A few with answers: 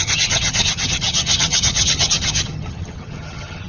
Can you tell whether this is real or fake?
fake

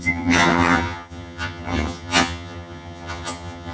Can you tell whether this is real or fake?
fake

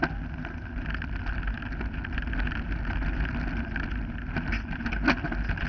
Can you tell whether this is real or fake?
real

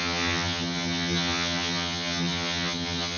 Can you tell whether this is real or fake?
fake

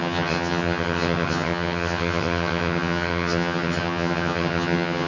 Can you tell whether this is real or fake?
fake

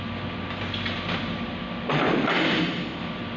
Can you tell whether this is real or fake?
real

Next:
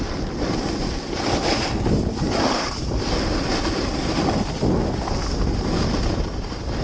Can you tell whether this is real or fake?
real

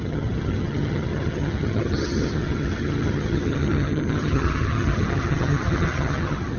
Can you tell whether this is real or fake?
fake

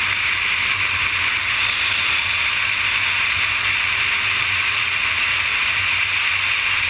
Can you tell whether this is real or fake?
real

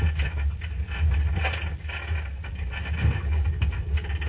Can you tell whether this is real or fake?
real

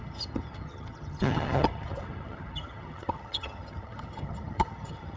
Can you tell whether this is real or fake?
fake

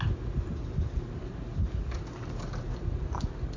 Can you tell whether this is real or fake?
real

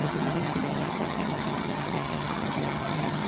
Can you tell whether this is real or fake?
fake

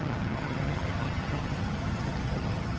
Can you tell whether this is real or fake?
fake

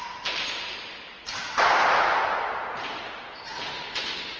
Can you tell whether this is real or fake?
real